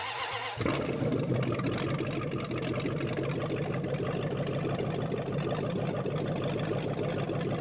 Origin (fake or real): real